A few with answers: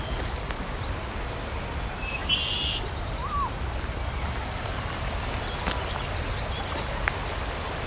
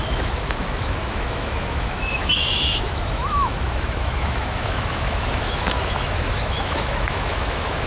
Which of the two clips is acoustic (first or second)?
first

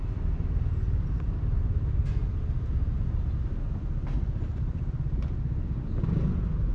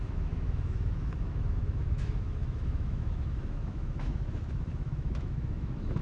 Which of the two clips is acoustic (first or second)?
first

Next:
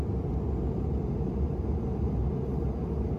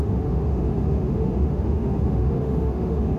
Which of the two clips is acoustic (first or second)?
first